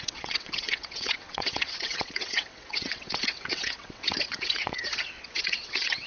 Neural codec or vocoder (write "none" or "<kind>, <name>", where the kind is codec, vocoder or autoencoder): vocoder, WaveNeXt